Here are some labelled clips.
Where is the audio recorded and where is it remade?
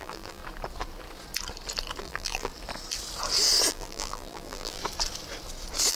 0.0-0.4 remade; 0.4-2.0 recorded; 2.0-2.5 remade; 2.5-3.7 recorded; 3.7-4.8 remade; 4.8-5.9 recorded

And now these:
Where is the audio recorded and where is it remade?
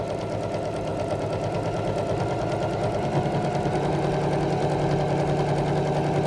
0.0-6.3 recorded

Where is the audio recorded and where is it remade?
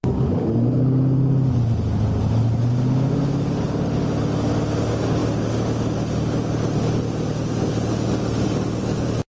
0.0-9.3 recorded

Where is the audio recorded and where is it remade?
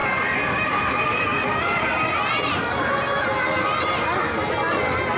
0.0-3.1 remade; 3.1-5.2 recorded